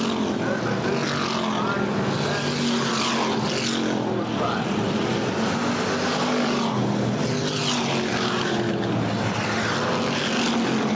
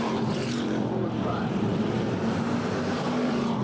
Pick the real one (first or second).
first